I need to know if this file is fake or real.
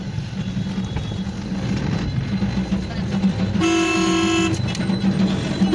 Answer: real